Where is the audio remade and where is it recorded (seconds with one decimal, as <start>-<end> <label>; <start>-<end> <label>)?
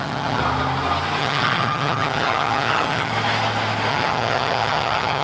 0.0-0.4 remade; 0.4-1.2 recorded; 1.2-3.1 remade; 3.1-3.9 recorded; 3.9-5.2 remade